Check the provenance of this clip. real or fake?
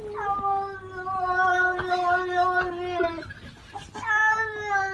real